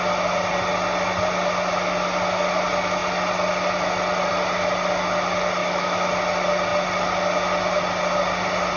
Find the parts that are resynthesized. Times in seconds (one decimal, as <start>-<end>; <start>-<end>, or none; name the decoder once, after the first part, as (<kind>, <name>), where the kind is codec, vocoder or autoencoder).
5.6-6.1 (autoencoder, DAC-VAE)